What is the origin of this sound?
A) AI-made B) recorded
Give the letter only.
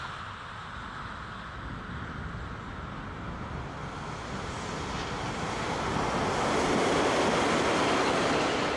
B